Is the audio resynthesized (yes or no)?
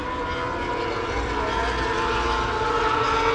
no